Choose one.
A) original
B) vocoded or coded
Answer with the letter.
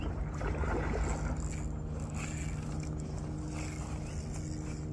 A